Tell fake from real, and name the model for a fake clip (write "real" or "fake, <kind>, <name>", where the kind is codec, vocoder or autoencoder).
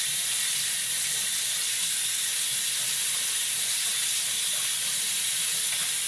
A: real